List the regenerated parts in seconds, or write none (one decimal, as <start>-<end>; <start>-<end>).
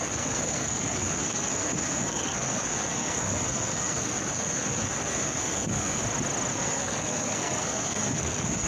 0.0-6.0; 6.5-8.7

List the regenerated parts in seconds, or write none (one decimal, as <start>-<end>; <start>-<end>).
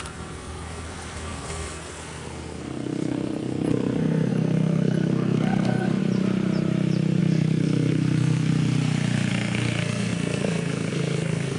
0.0-6.0; 7.2-8.5; 9.3-11.6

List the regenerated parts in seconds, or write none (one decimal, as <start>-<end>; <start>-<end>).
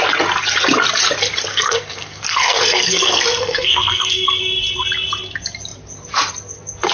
1.5-4.4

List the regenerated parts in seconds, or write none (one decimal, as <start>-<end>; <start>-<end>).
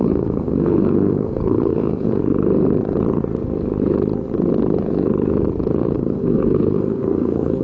0.0-2.2; 5.7-7.6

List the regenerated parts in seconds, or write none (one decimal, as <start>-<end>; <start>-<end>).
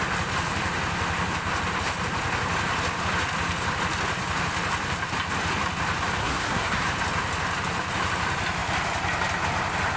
6.2-6.8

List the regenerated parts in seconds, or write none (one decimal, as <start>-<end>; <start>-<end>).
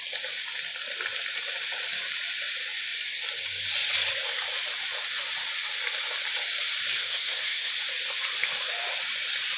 6.9-7.7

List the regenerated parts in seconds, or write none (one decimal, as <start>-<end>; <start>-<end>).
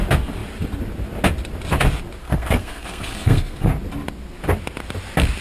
2.2-3.7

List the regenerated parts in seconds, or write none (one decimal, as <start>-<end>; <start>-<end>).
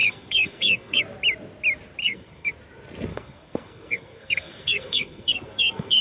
0.0-1.0; 2.0-2.5; 3.1-6.0